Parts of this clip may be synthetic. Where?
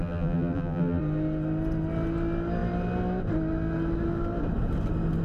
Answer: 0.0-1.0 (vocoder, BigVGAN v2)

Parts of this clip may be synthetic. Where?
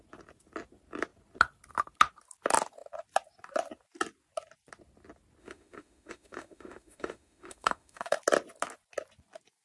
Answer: 5.4-8.2 (autoencoder, DAC-VAE)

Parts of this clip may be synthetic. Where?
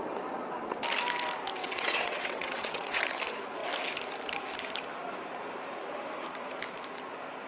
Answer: 1.6-3.0 (vocoder, WaveNeXt)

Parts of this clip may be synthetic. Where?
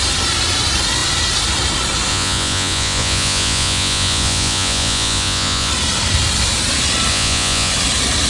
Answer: 2.1-5.7 (vocoder, Vocos); 7.1-7.7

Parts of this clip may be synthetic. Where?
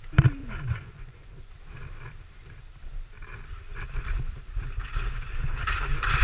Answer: 0.4-1.5 (vocoder, Vocos)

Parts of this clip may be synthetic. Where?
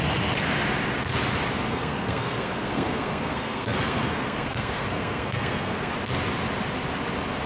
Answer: 1.7-5.9 (codec, SNAC)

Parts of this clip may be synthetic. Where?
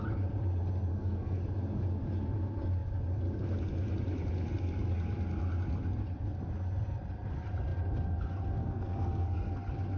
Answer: 0.9-1.4 (codec, SNAC); 8.6-9.5